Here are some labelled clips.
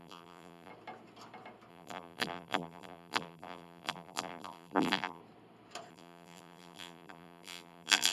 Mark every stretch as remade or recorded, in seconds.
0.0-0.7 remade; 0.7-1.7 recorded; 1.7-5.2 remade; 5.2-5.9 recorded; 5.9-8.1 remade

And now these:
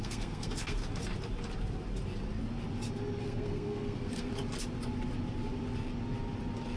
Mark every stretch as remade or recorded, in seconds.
0.0-0.8 remade; 0.8-3.2 recorded; 3.2-4.3 remade; 4.3-6.8 recorded

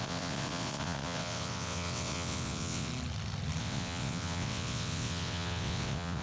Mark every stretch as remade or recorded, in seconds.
0.0-2.9 remade; 2.9-3.6 recorded; 3.6-6.2 remade

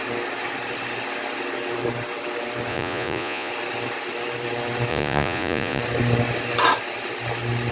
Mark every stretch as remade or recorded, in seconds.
0.0-2.7 recorded; 2.7-3.5 remade; 3.5-4.9 recorded; 4.9-5.8 remade; 5.8-7.7 recorded

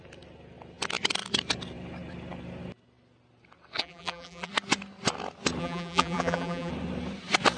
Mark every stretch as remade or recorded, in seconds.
0.0-3.8 recorded; 3.8-4.5 remade; 4.5-5.6 recorded; 5.6-6.7 remade; 6.7-7.6 recorded